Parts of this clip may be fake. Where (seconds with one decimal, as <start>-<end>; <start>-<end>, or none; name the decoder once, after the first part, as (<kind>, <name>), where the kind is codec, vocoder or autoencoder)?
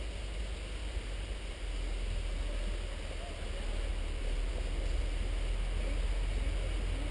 0.8-1.6 (vocoder, BigVGAN v2); 3.9-4.5